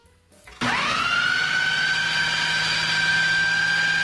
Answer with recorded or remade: recorded